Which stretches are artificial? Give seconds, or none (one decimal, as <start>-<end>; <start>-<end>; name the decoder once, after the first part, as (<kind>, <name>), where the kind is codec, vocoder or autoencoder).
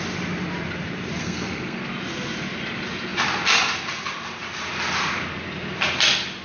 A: 1.2-1.8 (codec, SNAC)